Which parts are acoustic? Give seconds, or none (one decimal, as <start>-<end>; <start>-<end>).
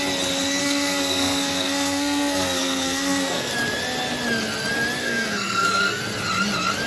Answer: 0.0-0.6; 3.5-5.0; 6.0-6.9